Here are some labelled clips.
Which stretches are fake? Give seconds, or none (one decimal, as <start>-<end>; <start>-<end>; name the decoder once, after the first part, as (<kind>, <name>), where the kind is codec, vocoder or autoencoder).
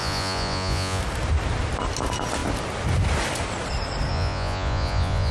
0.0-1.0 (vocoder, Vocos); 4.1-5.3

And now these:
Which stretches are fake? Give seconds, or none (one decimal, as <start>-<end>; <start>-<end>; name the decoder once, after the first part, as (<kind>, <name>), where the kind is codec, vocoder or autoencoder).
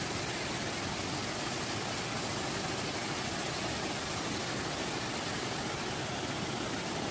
none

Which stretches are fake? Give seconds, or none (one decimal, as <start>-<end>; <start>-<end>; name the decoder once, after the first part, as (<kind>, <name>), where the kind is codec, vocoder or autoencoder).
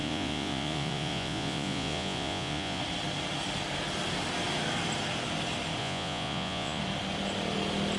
0.0-2.8 (vocoder, Vocos); 5.8-6.8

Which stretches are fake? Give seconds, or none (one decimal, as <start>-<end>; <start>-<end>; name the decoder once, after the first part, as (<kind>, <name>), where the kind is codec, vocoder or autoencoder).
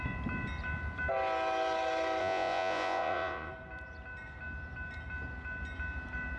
2.2-3.5 (vocoder, Vocos)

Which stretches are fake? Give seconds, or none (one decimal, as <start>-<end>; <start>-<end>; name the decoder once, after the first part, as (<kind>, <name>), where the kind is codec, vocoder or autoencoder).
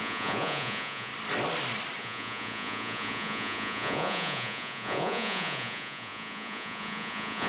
0.0-1.1 (vocoder, Vocos); 2.0-7.5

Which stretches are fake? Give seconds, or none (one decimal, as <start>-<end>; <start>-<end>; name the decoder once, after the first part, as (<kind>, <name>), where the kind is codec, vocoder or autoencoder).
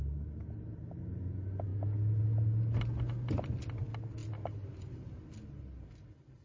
none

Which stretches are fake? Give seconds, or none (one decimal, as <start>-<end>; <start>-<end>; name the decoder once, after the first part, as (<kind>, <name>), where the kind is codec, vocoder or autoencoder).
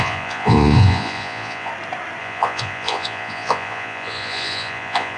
0.0-1.7 (vocoder, Vocos); 2.2-5.2